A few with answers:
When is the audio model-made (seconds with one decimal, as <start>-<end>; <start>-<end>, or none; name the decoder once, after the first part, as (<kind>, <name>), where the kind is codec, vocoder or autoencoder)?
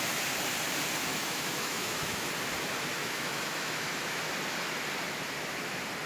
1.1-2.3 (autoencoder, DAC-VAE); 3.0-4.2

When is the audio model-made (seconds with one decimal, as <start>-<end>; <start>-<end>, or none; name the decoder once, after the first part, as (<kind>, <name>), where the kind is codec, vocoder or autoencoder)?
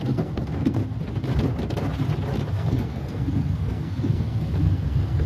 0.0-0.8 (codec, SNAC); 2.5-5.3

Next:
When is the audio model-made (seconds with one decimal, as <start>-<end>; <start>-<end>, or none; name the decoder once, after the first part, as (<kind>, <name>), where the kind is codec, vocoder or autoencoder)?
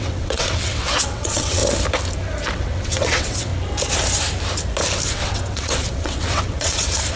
0.0-1.6 (vocoder, WaveNeXt); 2.5-3.5; 5.1-7.2